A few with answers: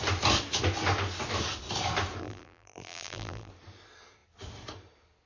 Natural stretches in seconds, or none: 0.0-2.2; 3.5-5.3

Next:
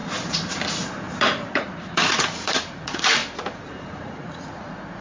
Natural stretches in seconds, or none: 0.0-1.2; 3.2-3.7

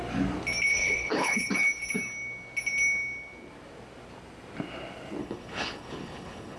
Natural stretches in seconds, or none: 0.0-0.7; 1.5-5.2

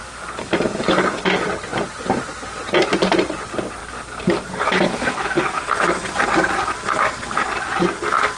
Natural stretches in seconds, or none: 1.2-3.8; 5.6-8.4

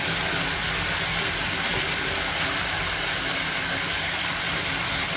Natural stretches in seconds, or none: 0.0-5.2

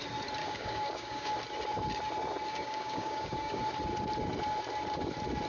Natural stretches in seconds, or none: 0.0-0.4; 1.3-2.5; 3.6-5.5